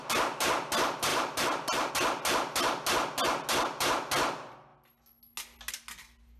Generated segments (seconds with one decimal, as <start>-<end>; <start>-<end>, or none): 1.1-1.9